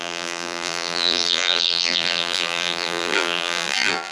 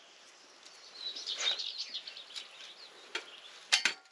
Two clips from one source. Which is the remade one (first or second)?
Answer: first